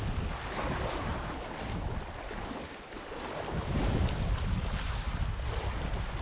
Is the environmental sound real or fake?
real